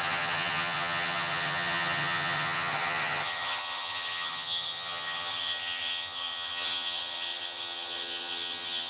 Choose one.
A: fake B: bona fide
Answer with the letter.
A